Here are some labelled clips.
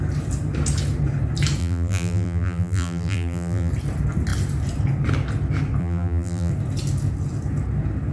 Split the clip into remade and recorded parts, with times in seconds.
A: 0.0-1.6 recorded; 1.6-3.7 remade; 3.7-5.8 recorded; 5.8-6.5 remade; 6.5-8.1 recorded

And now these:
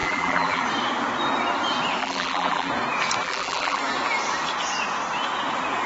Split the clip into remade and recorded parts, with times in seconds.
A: 0.0-0.6 remade; 0.6-2.0 recorded; 2.0-2.7 remade; 2.7-3.2 recorded; 3.2-3.8 remade; 3.8-5.9 recorded

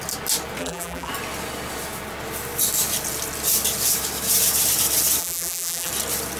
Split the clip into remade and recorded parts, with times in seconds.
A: 0.0-0.6 recorded; 0.6-1.1 remade; 1.1-5.2 recorded; 5.2-5.9 remade; 5.9-6.4 recorded

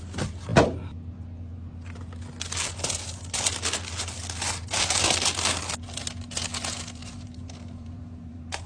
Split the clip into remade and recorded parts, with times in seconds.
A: 0.0-7.0 recorded; 7.0-8.7 remade

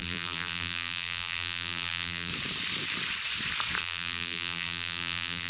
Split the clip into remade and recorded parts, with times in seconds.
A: 0.0-2.3 remade; 2.3-3.8 recorded; 3.8-5.5 remade

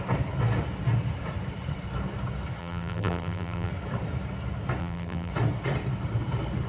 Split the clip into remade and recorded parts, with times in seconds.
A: 0.0-2.6 recorded; 2.6-3.7 remade; 3.7-4.8 recorded; 4.8-5.3 remade; 5.3-6.7 recorded